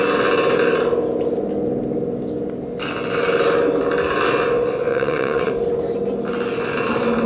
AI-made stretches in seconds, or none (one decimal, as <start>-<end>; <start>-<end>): 4.9-5.5